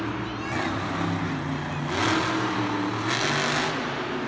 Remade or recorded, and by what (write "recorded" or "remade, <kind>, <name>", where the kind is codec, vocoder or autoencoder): recorded